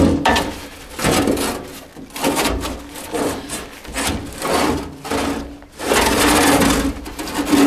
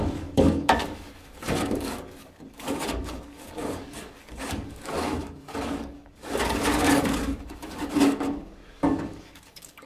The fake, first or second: second